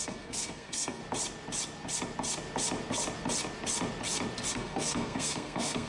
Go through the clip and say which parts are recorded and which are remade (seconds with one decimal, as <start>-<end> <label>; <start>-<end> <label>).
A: 0.0-1.0 remade; 1.0-4.5 recorded; 4.5-5.9 remade